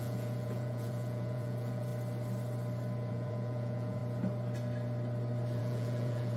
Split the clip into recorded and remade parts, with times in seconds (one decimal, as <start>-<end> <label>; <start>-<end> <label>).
0.0-1.9 remade; 1.9-3.1 recorded; 3.1-4.0 remade; 4.0-5.6 recorded; 5.6-6.4 remade